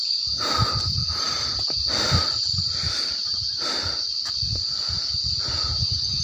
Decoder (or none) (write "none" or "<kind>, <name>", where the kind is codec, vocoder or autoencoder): none